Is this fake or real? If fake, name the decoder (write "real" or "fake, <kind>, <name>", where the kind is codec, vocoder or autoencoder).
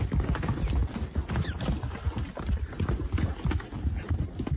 real